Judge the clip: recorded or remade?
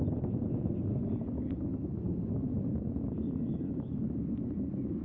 recorded